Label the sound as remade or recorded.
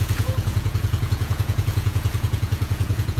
remade